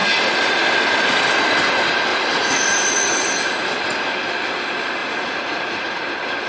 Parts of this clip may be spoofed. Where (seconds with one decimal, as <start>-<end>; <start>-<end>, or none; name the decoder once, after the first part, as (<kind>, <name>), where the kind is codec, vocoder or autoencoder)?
2.1-3.3 (vocoder, Vocos); 5.0-5.9